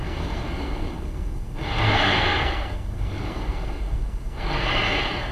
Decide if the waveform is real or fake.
fake